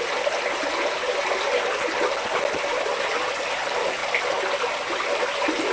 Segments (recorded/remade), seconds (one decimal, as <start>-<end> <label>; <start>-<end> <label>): 0.0-5.7 recorded